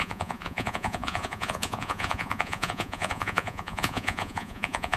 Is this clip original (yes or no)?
no